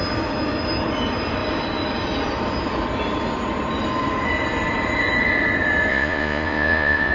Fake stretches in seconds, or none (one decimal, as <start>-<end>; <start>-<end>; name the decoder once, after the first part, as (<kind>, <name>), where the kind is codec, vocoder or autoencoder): 5.9-7.1 (vocoder, Vocos)